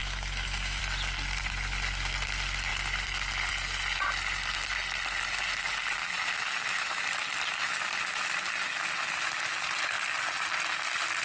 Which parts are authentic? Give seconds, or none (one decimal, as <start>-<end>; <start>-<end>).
0.8-6.0; 7.0-11.2